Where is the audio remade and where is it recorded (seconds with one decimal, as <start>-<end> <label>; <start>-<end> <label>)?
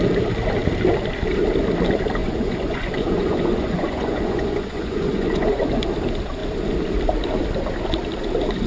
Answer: 0.0-2.2 recorded; 2.2-5.6 remade; 5.6-8.7 recorded